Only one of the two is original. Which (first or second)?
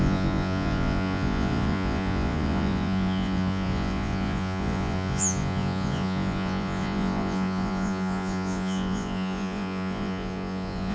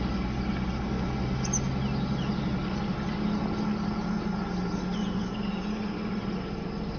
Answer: second